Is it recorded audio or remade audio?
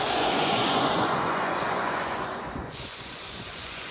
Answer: remade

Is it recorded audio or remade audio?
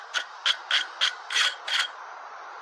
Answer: recorded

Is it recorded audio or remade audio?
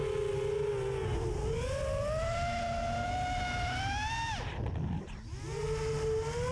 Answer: recorded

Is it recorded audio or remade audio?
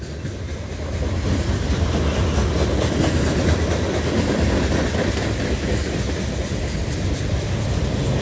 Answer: recorded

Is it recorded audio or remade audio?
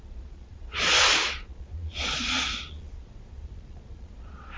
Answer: remade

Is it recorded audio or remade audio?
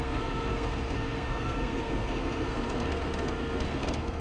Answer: remade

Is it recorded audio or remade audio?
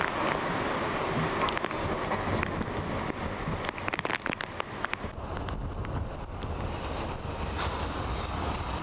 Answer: recorded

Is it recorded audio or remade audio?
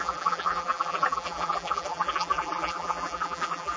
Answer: remade